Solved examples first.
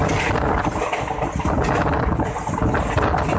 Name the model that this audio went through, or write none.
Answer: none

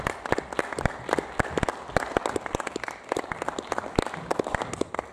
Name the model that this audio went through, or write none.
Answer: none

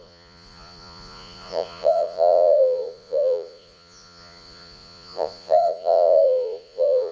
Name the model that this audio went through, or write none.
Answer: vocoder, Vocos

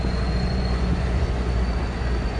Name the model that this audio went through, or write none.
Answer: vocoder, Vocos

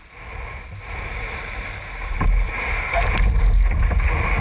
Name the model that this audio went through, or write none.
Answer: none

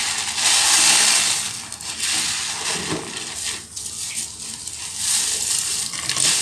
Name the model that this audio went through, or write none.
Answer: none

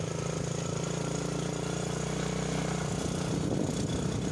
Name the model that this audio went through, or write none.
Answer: none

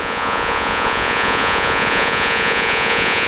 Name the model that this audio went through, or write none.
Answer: vocoder, Vocos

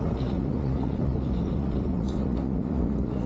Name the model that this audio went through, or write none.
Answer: vocoder, Vocos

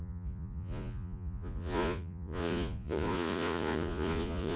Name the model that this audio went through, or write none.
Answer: vocoder, Vocos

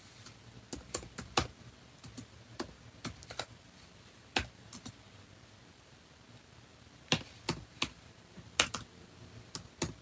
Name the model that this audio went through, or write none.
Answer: none